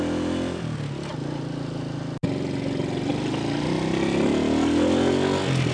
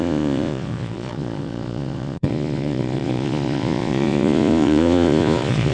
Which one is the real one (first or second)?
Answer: first